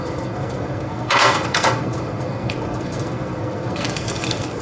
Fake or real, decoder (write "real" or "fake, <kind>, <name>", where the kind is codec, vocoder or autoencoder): fake, codec, SNAC